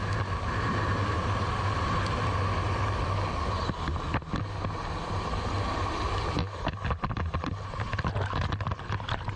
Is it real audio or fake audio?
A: real